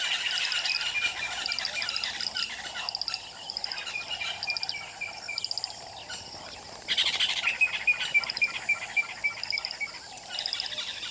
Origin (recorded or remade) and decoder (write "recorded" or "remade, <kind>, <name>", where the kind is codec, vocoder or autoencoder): recorded